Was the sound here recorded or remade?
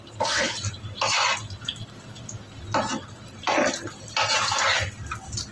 recorded